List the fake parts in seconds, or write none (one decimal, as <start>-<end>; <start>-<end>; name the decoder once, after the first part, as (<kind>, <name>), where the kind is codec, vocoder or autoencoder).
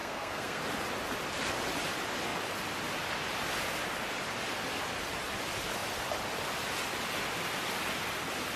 0.0-0.6 (codec, SNAC)